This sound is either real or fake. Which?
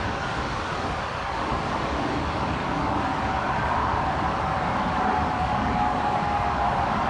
fake